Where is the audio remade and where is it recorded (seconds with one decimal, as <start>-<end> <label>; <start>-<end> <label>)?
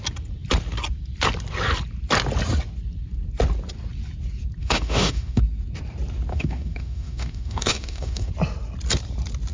0.0-4.6 recorded; 4.6-5.4 remade; 5.4-6.3 recorded; 6.3-8.3 remade; 8.3-9.5 recorded